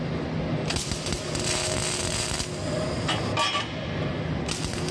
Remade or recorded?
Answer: recorded